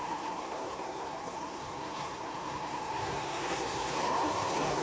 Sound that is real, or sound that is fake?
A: fake